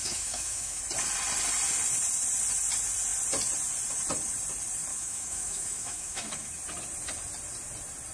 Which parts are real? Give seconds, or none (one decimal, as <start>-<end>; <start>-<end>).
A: 0.8-4.9; 6.5-8.1